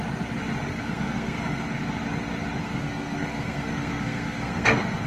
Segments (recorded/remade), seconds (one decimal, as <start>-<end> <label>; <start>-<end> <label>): 0.0-0.7 recorded; 0.7-1.7 remade; 1.7-2.6 recorded; 2.6-5.1 remade